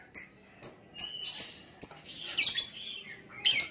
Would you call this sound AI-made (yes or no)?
no